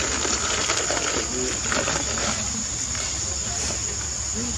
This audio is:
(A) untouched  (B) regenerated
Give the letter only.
A